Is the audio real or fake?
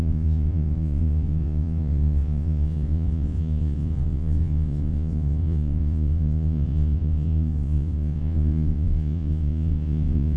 fake